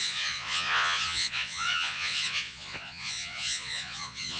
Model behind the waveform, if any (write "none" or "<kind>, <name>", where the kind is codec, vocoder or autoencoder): vocoder, Vocos